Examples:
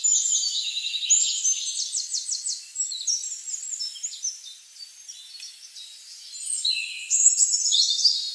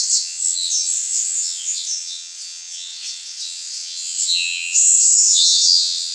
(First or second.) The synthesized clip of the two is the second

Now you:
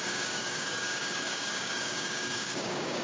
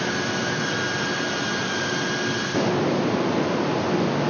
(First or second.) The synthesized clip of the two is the first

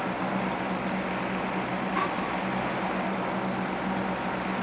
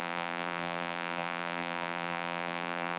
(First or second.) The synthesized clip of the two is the second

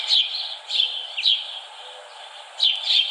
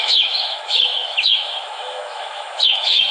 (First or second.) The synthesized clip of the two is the second